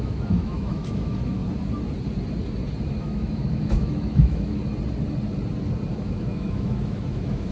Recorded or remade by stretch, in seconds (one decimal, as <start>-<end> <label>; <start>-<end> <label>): 0.0-1.4 remade; 1.4-3.0 recorded; 3.0-4.6 remade; 4.6-6.0 recorded; 6.0-7.5 remade